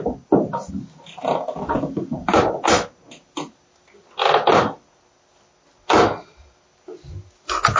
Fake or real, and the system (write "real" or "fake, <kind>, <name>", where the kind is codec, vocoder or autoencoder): real